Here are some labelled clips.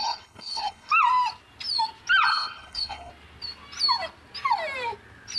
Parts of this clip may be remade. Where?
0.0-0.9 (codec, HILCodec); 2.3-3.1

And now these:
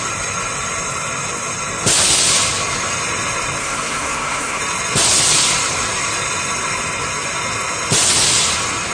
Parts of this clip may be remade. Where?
3.6-4.6 (codec, SNAC)

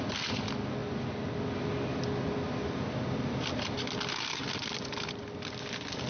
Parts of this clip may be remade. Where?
none

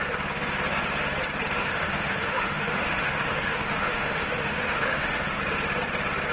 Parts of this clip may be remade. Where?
1.6-5.4 (autoencoder, DAC-VAE)

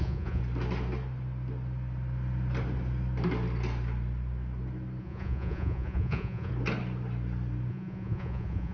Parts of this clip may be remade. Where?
0.0-0.4 (vocoder, Vocos); 5.0-6.5; 7.7-8.7

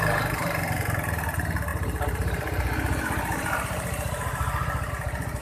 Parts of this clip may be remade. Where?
none